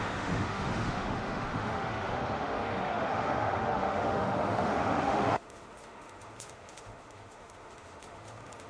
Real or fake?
fake